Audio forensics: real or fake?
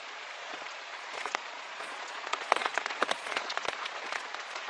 fake